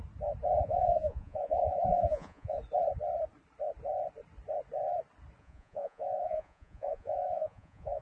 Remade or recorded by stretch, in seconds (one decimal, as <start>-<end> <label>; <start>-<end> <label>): 0.0-0.6 recorded; 0.6-2.6 remade; 2.6-5.4 recorded; 5.4-8.0 remade